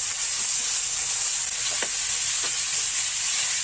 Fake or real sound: real